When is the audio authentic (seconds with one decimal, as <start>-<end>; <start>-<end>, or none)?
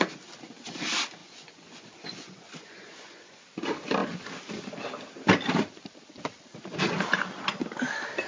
0.0-1.2; 3.4-8.3